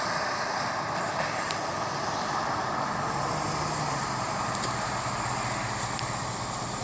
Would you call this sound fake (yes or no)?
no